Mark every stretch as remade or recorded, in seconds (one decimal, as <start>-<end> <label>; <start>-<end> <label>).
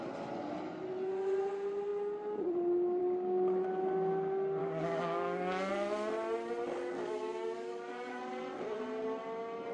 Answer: 0.0-4.6 recorded; 4.6-5.7 remade; 5.7-7.0 recorded; 7.0-8.2 remade; 8.2-9.7 recorded